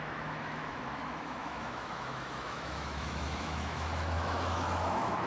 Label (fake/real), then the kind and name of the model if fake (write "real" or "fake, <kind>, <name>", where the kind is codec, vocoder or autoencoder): fake, autoencoder, DAC-VAE